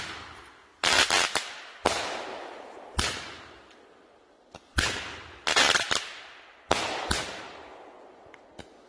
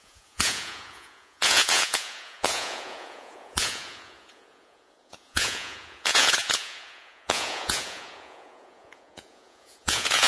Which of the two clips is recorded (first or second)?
first